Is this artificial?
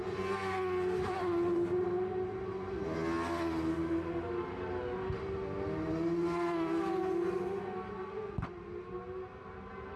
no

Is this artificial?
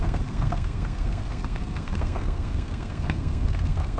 yes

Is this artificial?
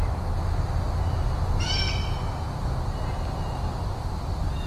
no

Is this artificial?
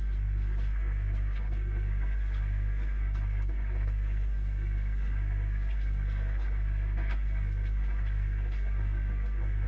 yes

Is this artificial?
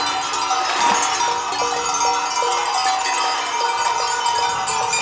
no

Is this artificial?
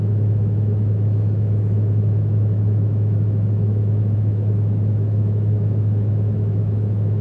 yes